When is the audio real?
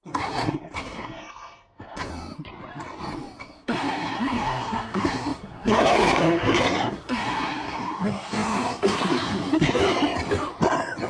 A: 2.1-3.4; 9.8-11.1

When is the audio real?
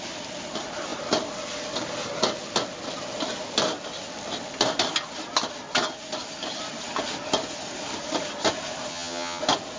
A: 0.0-8.9; 9.4-9.8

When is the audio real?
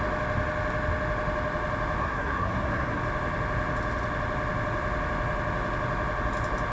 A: 0.0-2.0; 3.0-6.7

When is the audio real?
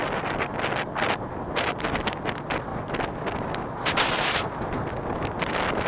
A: 0.0-5.9